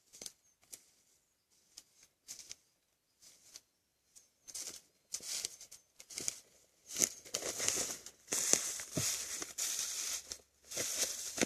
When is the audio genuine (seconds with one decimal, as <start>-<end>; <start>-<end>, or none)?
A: 0.0-11.5